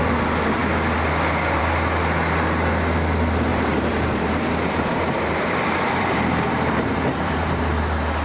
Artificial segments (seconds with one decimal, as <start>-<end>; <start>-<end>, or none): 3.5-7.6

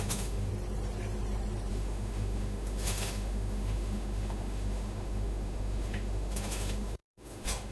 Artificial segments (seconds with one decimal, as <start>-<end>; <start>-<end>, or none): 0.0-0.5; 1.7-7.7

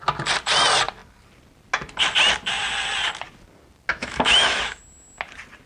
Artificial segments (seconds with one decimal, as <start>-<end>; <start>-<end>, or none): 3.9-4.8

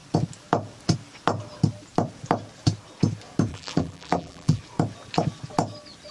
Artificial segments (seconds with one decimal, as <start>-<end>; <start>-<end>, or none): 3.5-4.6